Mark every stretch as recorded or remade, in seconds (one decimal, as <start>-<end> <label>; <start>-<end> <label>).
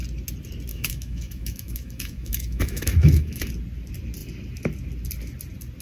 0.0-0.7 recorded; 0.7-3.5 remade; 3.5-5.8 recorded